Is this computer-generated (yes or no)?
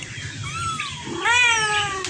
no